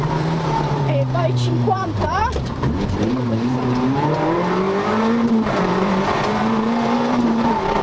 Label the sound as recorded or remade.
remade